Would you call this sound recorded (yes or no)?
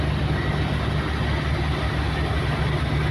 yes